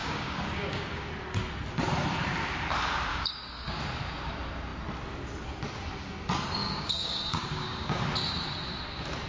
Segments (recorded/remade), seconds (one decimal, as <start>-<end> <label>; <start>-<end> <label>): 0.0-1.1 remade; 1.1-3.1 recorded; 3.1-3.8 remade; 3.8-6.6 recorded; 6.6-8.0 remade; 8.0-9.3 recorded